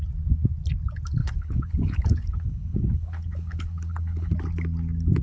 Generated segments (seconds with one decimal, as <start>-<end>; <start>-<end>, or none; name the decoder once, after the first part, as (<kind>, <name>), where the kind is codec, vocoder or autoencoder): 1.2-4.3 (codec, HILCodec)